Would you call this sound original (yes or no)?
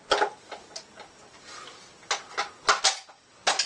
yes